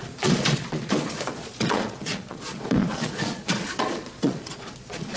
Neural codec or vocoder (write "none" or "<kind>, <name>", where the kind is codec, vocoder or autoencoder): vocoder, Vocos